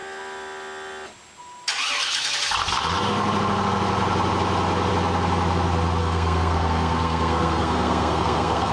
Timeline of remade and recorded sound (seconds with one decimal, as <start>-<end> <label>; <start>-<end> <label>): 0.0-6.0 recorded; 6.0-8.7 remade